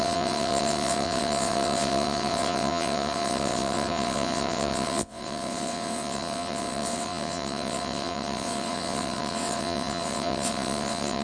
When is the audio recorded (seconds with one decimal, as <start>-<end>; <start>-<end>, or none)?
none